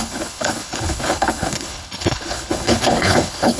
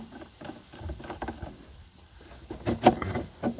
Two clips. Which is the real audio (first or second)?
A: second